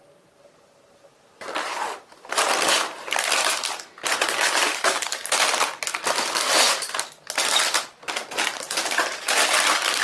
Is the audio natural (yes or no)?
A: no